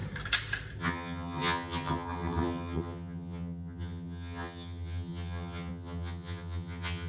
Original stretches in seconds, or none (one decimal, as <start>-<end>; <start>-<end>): 0.0-0.8